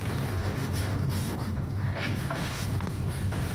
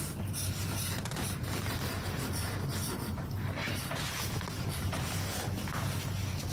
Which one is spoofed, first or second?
first